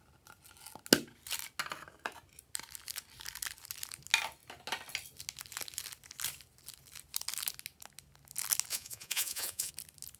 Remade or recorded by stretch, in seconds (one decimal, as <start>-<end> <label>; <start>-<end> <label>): 0.0-8.7 recorded; 8.7-9.7 remade; 9.7-10.2 recorded